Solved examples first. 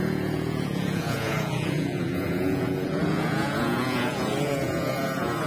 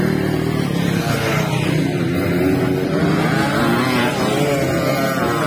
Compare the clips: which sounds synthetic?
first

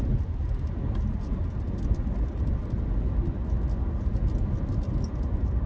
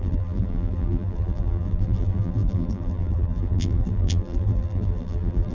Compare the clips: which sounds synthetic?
second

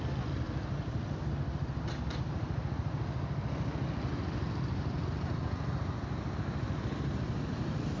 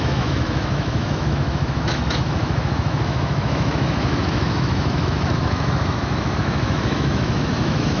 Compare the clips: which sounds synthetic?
second